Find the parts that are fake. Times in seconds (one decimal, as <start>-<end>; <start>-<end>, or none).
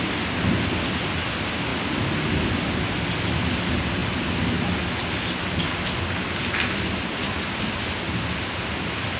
none